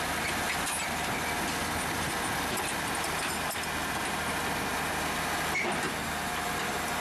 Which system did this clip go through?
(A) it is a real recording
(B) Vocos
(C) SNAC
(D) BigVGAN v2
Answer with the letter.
A